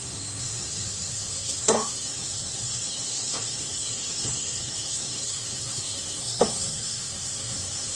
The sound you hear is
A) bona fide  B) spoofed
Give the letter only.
B